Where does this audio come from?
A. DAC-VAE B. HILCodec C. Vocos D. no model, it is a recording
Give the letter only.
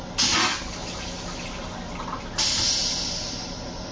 D